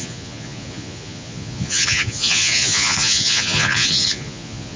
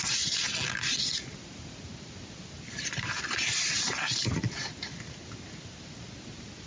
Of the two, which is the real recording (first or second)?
second